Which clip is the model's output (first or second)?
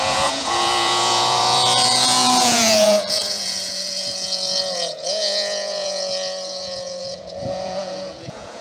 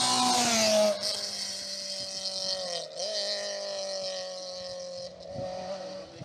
first